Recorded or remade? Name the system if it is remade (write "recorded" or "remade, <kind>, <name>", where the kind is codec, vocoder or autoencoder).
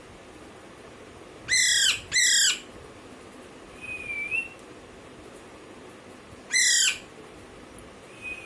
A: recorded